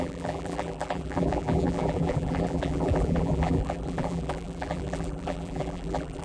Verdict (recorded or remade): remade